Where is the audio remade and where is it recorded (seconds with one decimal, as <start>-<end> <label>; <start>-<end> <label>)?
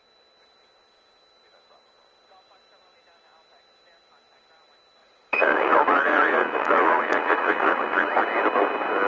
0.0-5.0 recorded; 5.0-8.2 remade; 8.2-9.1 recorded